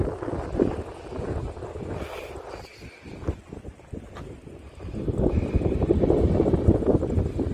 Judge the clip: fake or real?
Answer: real